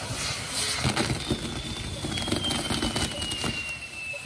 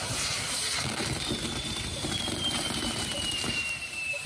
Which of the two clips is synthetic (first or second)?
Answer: second